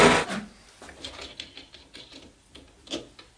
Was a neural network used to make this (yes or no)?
no